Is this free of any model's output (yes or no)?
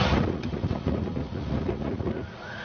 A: no